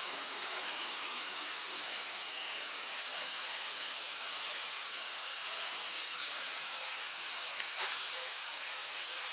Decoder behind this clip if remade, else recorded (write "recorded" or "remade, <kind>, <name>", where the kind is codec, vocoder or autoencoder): remade, codec, SNAC